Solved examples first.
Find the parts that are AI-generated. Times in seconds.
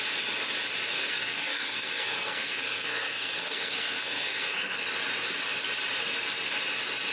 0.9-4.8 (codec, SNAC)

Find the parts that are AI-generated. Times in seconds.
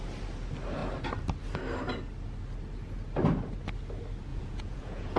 4.3-5.2 (vocoder, Vocos)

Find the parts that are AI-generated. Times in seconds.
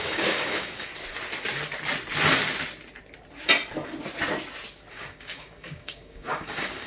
0.0-0.9 (codec, DAC); 4.9-6.9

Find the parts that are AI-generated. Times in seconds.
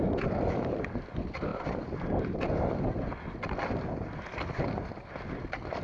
none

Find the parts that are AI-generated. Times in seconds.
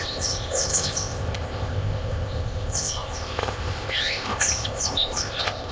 0.0-5.7 (codec, ZipCodec)